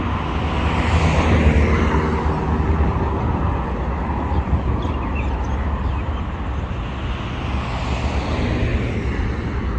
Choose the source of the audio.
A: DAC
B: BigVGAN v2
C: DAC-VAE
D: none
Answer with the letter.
D